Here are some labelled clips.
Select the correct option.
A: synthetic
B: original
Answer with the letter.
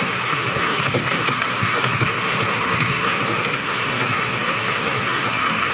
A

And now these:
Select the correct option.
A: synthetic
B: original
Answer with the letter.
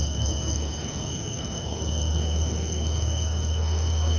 A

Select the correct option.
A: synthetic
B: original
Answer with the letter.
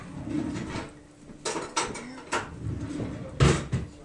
B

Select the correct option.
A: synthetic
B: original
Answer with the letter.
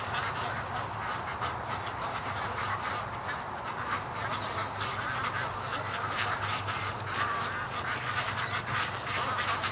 B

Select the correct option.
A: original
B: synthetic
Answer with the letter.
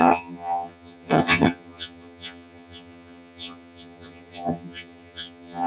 B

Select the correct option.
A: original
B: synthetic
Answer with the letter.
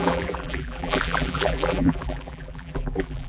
B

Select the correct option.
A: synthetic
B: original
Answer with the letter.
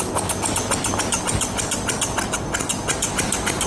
B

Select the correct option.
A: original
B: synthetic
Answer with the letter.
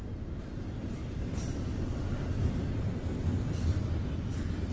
A